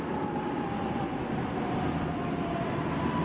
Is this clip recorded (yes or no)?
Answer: yes